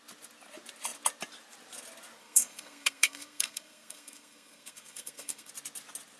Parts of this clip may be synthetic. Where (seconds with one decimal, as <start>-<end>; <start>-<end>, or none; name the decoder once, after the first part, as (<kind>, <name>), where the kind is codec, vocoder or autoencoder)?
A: 2.2-5.5 (codec, SNAC)